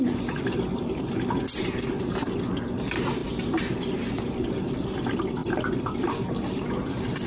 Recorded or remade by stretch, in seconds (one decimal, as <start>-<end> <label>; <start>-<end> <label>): 0.0-3.2 recorded; 3.2-4.1 remade; 4.1-5.4 recorded; 5.4-6.0 remade; 6.0-7.3 recorded